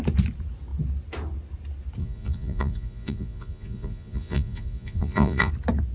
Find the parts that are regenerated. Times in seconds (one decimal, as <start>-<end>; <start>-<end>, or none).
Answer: 2.0-5.5